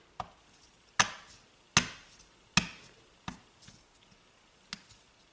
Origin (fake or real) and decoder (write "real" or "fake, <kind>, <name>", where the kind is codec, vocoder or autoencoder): real